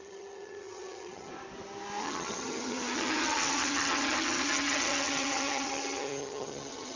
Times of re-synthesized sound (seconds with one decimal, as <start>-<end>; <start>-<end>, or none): 0.0-1.3; 2.0-7.0